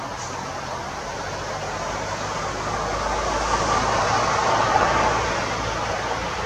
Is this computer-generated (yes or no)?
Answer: no